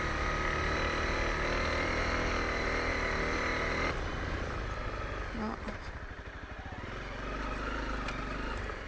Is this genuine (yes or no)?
yes